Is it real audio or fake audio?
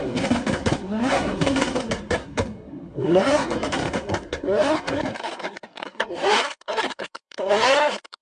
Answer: fake